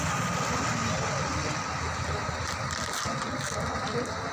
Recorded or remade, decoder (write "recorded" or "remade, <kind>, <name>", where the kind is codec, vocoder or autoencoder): recorded